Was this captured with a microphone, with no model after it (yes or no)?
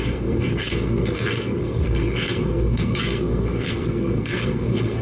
no